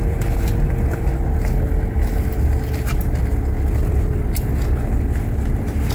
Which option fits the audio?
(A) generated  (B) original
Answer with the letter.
B